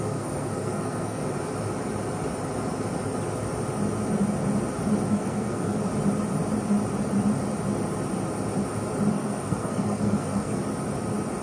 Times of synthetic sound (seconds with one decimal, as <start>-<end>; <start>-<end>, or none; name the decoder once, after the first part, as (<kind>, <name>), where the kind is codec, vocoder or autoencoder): 0.0-1.2 (codec, SNAC); 5.1-5.9; 9.1-10.6

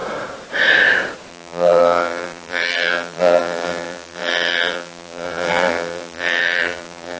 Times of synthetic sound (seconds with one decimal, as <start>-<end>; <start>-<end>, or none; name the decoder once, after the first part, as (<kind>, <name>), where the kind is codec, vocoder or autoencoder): 1.3-7.2 (vocoder, BigVGAN v2)

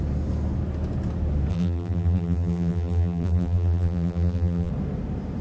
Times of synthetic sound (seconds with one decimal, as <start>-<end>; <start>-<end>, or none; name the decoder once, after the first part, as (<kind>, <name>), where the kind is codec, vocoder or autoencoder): 1.5-4.7 (vocoder, BigVGAN v2)

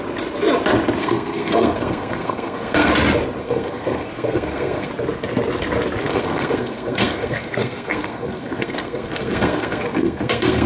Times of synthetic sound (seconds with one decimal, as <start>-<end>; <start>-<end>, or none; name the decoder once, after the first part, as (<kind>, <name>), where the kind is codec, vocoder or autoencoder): 1.0-2.9 (codec, SNAC); 3.4-4.9; 6.0-10.7

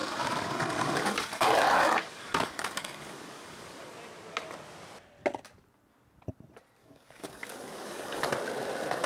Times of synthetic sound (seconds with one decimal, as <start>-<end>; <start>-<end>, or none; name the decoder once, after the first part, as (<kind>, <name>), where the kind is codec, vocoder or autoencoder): 0.0-3.8 (codec, DAC); 6.8-8.3